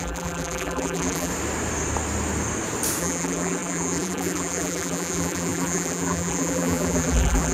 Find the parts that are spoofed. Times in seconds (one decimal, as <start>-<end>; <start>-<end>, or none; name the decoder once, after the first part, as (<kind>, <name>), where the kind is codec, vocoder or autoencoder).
0.0-1.3 (vocoder, BigVGAN v2); 3.0-7.5